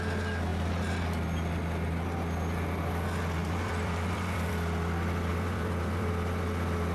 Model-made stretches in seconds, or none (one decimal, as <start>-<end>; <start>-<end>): 3.4-4.5; 5.3-6.1